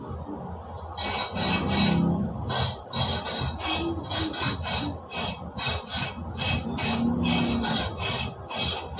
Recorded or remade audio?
recorded